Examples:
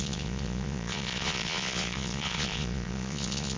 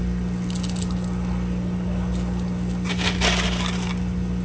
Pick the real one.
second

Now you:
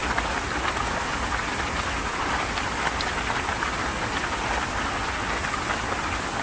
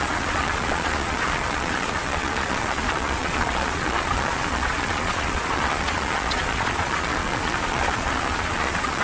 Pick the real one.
first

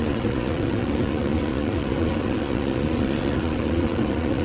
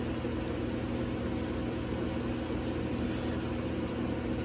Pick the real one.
second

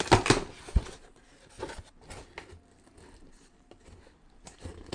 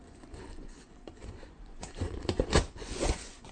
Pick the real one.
first